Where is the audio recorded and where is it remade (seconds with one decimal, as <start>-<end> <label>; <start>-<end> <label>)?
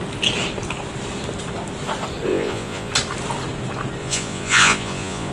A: 0.0-2.3 recorded; 2.3-2.9 remade; 2.9-4.0 recorded; 4.0-5.3 remade